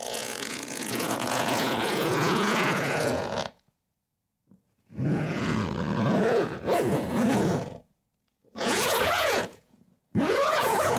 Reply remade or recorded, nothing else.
remade